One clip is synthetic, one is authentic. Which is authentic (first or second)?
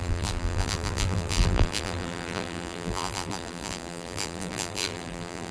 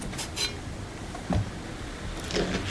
second